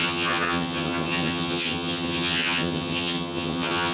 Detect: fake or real fake